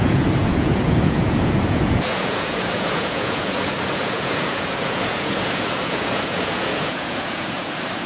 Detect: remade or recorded remade